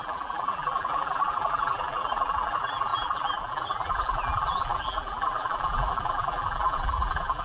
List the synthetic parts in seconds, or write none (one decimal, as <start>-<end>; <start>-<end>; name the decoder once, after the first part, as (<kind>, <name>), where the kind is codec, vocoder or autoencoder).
0.0-7.4 (vocoder, BigVGAN v2)